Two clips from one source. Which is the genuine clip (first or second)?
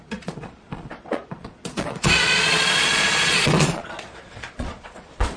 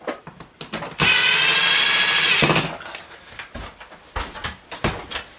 second